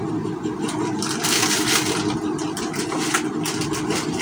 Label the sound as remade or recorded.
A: recorded